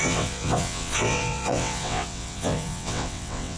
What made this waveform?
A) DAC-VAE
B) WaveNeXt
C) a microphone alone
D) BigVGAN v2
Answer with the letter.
B